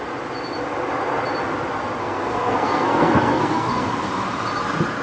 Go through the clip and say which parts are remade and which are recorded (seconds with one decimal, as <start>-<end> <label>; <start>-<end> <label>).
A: 0.0-2.0 recorded; 2.0-3.9 remade; 3.9-5.0 recorded